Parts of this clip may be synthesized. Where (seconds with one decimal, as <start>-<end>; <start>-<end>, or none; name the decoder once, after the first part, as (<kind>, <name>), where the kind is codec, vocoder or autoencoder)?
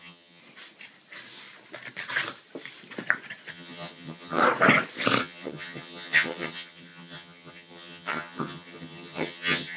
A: 0.0-0.4 (vocoder, HiFi-GAN); 3.5-4.4; 5.2-9.8